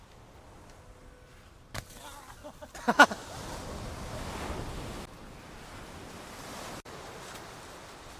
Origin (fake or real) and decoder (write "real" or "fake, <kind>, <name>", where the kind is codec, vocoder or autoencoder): real